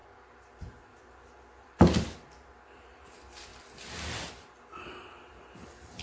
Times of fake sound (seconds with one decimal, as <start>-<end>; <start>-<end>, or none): 0.0-3.5; 4.4-6.0